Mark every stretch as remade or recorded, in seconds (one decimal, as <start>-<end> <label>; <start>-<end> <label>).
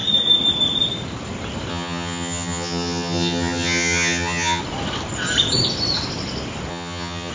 0.0-1.7 recorded; 1.7-4.6 remade; 4.6-6.7 recorded; 6.7-7.3 remade